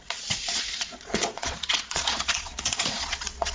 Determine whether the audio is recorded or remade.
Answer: remade